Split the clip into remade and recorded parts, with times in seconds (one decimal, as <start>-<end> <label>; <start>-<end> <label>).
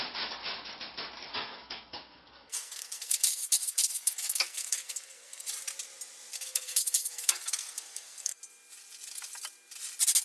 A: 0.0-1.3 recorded; 1.3-5.5 remade; 5.5-6.3 recorded; 6.3-8.4 remade; 8.4-10.2 recorded